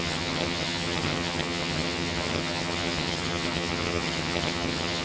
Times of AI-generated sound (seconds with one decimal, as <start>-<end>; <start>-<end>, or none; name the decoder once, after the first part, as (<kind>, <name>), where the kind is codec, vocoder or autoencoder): 0.0-5.0 (vocoder, HiFi-GAN)